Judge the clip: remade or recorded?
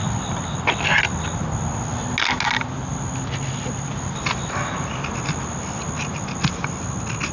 recorded